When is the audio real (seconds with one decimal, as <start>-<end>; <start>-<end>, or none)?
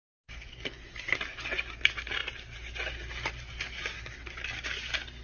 0.0-5.2